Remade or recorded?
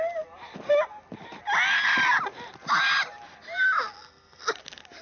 recorded